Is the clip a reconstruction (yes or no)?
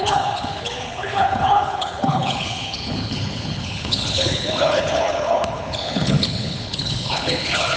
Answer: yes